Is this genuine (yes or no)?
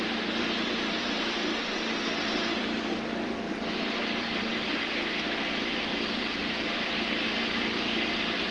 no